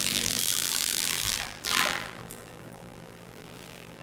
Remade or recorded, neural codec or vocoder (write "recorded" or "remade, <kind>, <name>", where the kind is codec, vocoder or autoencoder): remade, vocoder, BigVGAN v2